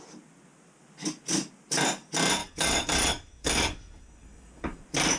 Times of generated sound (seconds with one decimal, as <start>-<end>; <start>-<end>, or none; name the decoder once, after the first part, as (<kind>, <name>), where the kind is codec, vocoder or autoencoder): 2.4-4.8 (codec, DAC)